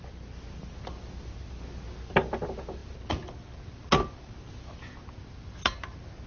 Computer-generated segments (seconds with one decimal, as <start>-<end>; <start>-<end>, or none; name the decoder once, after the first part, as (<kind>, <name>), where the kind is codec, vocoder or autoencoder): none